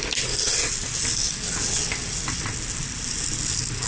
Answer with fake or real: real